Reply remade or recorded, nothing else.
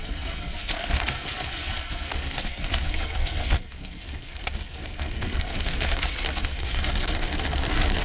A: remade